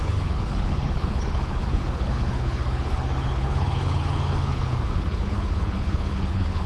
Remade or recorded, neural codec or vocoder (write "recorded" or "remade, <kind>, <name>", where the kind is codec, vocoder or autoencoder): remade, codec, HILCodec